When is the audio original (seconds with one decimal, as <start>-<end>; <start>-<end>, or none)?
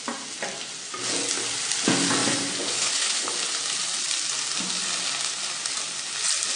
0.0-2.2; 3.3-6.6